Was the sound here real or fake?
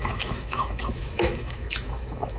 fake